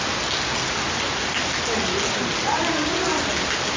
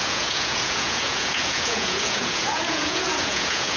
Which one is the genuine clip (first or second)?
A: first